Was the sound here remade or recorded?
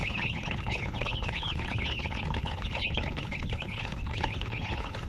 remade